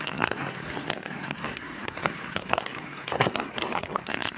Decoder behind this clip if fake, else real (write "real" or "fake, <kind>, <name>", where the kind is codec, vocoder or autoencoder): fake, codec, SNAC